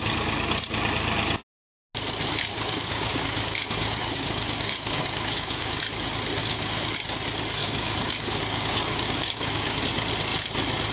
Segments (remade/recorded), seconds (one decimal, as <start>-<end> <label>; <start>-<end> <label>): 0.0-2.5 recorded; 2.5-5.8 remade; 5.8-6.4 recorded; 6.4-6.9 remade; 6.9-7.6 recorded; 7.6-9.8 remade; 9.8-10.9 recorded